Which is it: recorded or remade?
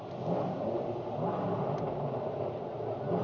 recorded